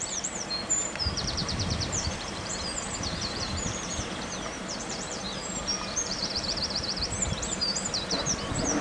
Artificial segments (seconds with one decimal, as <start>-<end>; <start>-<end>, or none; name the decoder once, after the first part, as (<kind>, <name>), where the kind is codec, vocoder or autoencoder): 0.0-8.8 (vocoder, BigVGAN v2)